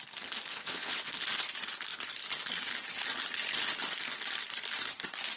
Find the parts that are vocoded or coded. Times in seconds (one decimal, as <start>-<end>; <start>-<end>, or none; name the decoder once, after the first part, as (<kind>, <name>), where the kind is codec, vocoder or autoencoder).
0.5-1.1 (vocoder, WaveNeXt)